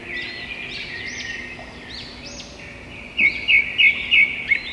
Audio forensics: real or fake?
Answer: real